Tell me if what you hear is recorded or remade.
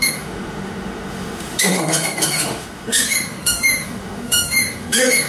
remade